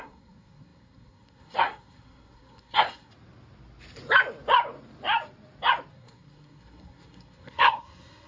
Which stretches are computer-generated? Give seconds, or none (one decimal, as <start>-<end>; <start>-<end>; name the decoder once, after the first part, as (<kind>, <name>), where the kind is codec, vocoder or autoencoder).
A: 0.0-3.1 (codec, SNAC); 5.9-8.3